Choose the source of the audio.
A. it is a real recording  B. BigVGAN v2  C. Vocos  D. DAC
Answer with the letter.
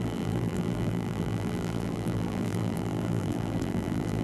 B